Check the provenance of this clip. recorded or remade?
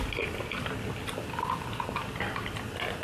recorded